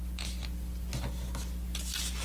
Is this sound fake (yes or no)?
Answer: no